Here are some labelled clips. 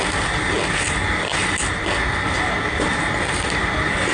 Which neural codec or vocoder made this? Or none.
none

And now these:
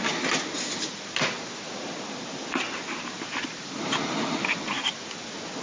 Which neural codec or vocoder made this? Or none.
vocoder, BigVGAN v2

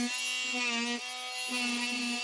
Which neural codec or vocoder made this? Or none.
none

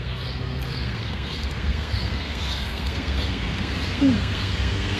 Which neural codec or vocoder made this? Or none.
codec, SNAC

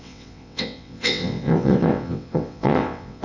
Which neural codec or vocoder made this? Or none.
vocoder, WaveNeXt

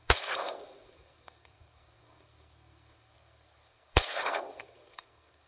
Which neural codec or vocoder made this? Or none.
codec, SNAC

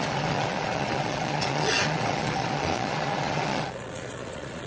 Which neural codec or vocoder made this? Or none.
vocoder, Vocos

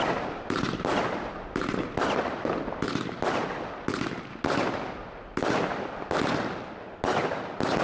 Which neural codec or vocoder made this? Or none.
none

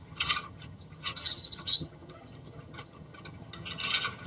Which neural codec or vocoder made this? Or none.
vocoder, HiFi-GAN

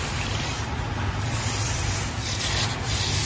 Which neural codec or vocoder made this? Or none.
none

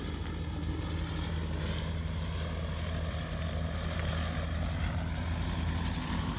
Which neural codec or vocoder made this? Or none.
none